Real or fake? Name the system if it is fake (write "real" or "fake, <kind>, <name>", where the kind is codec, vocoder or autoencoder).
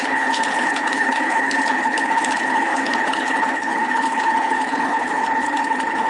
fake, codec, HILCodec